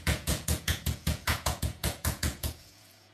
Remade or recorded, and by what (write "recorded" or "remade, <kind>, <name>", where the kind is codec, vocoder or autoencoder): remade, vocoder, Vocos